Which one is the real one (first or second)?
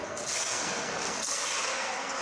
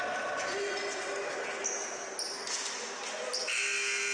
second